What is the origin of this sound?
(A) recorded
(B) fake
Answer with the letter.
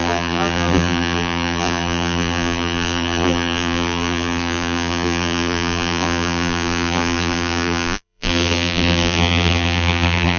B